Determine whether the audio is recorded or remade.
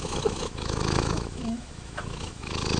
remade